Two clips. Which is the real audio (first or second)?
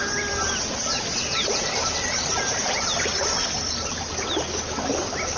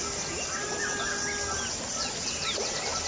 second